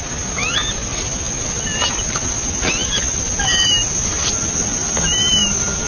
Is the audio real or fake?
real